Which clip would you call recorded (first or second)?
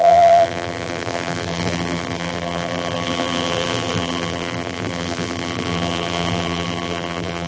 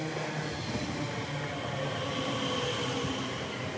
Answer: second